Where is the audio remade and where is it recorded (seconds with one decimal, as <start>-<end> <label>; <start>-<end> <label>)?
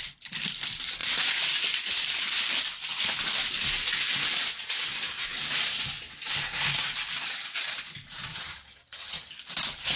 0.0-8.3 recorded; 8.3-9.3 remade; 9.3-10.0 recorded